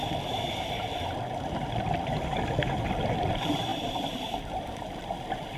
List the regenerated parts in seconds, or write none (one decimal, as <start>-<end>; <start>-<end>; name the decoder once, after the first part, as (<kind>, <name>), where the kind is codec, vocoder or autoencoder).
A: 3.3-5.6 (vocoder, BigVGAN v2)